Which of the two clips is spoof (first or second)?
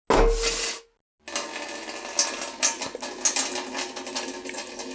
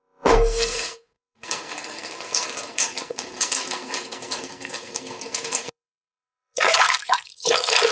second